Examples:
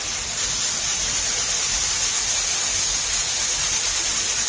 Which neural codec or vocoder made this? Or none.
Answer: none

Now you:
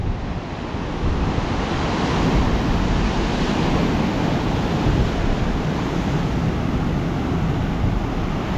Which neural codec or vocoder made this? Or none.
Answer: none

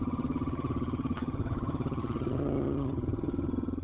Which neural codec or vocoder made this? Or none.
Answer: vocoder, HiFi-GAN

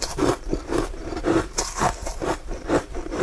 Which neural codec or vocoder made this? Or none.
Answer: vocoder, BigVGAN v2